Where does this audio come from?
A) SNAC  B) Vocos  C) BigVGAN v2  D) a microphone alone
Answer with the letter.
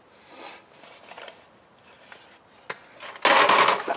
D